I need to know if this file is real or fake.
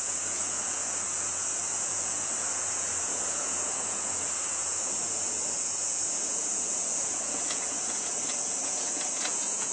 fake